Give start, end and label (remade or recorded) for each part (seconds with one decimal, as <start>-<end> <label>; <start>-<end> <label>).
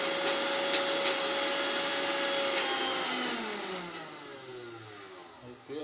0.0-5.8 recorded